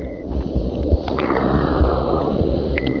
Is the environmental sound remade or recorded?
remade